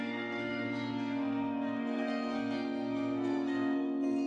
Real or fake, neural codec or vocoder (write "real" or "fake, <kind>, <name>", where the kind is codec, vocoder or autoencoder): fake, codec, SNAC